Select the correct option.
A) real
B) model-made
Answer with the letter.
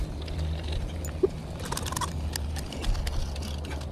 A